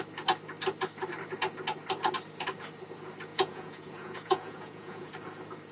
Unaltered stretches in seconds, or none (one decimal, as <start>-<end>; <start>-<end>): 0.0-3.3; 5.1-5.7